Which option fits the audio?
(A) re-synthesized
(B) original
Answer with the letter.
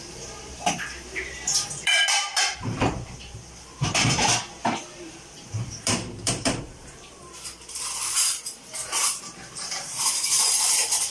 A